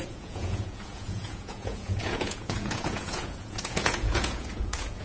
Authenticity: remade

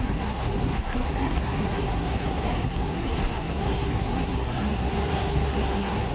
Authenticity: remade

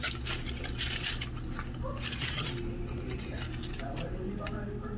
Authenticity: recorded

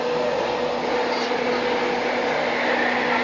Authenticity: recorded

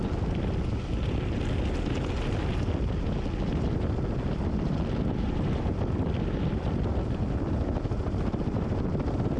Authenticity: recorded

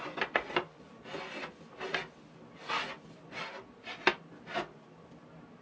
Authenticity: recorded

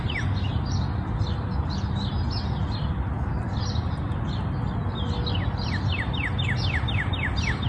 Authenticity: recorded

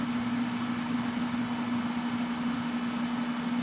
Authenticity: recorded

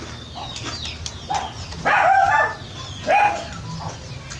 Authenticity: recorded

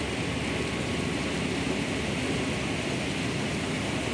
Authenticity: recorded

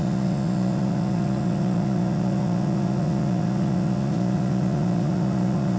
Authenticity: remade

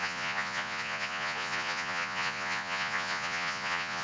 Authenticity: remade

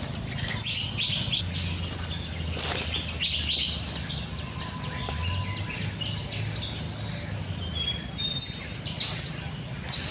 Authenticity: recorded